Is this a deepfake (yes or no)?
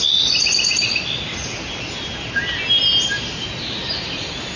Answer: no